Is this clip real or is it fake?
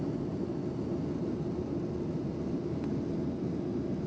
real